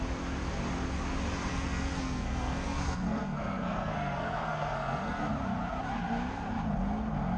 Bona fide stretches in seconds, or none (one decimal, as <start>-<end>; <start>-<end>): 0.0-1.5; 5.3-7.4